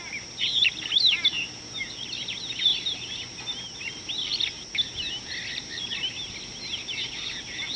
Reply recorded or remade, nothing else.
recorded